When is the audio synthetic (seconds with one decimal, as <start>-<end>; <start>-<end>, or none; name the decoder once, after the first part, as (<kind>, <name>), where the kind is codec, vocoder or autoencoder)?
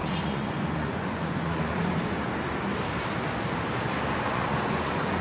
0.0-2.3 (vocoder, Vocos); 4.3-5.2